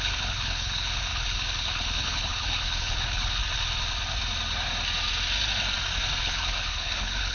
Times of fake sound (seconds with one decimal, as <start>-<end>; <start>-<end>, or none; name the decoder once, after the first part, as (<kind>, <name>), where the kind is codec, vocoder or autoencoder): 0.0-3.4 (codec, HILCodec); 6.2-7.3